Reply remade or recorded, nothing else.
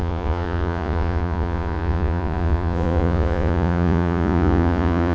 remade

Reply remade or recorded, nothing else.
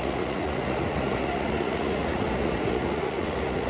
remade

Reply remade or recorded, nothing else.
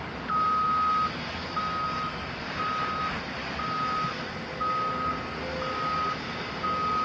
recorded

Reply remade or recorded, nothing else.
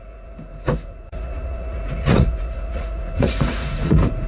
remade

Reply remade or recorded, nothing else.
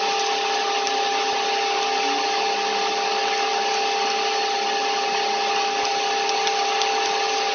recorded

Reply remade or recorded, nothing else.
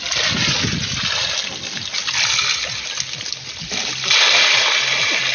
recorded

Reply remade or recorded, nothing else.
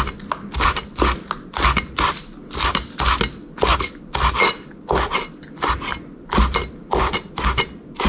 recorded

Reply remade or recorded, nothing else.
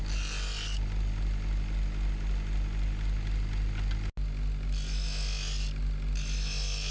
recorded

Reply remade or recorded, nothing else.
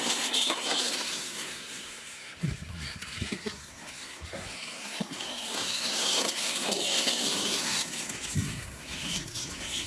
remade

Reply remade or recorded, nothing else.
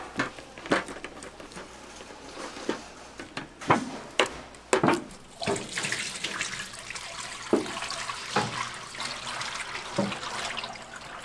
recorded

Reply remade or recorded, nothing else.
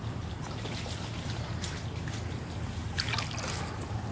recorded